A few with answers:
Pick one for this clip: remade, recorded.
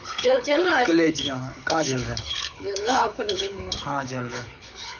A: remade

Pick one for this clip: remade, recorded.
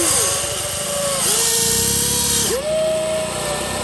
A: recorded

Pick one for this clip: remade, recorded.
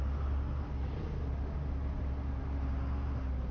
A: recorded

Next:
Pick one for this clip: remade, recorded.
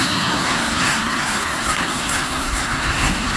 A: remade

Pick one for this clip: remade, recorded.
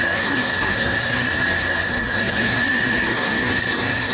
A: remade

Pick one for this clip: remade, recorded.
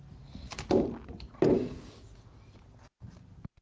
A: recorded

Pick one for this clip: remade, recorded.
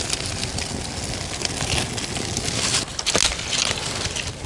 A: recorded